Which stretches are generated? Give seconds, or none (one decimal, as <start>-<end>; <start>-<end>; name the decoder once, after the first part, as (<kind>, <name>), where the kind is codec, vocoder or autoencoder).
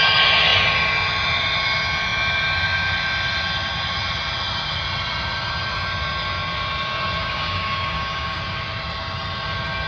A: 7.2-8.4 (codec, DAC)